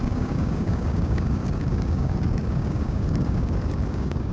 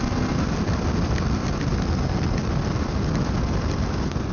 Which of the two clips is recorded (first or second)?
second